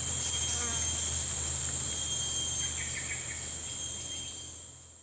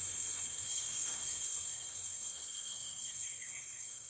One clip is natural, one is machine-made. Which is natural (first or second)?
first